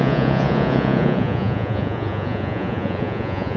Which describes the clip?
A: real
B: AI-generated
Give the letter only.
B